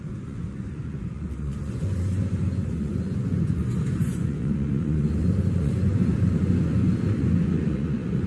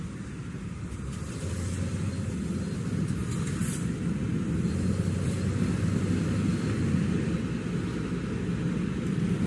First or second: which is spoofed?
first